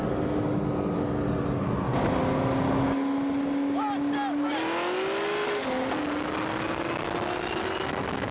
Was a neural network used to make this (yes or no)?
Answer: no